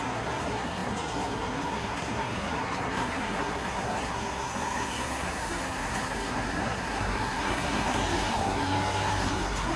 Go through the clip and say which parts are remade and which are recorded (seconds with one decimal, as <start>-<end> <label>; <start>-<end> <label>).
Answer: 0.0-9.8 remade